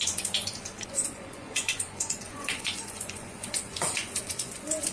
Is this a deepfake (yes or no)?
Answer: yes